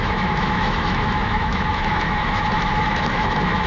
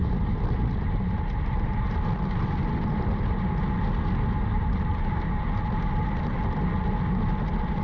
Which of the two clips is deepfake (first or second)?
first